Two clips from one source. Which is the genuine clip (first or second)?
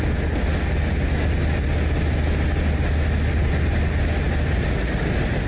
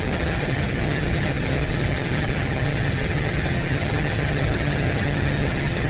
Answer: first